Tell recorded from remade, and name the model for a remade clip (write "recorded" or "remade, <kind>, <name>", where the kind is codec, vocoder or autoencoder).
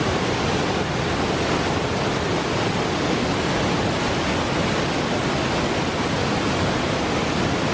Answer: recorded